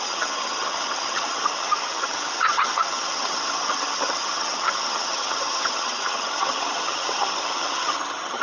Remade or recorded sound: remade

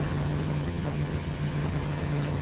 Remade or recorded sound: remade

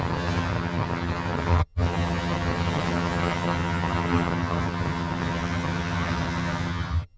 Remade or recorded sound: remade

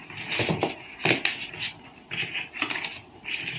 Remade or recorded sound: recorded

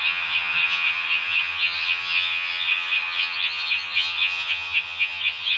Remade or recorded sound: remade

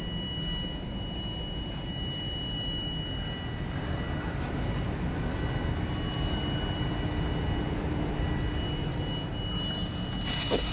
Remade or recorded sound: recorded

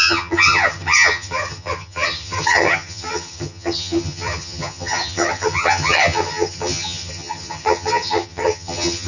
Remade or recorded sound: remade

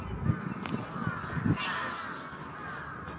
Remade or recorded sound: recorded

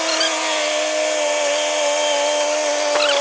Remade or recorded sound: recorded